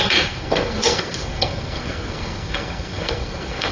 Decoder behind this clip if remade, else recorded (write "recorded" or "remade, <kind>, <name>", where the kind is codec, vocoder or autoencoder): remade, codec, SNAC